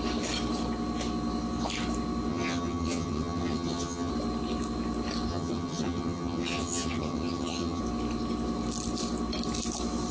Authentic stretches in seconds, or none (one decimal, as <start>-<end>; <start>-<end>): 0.0-2.3; 4.1-5.3; 7.8-10.1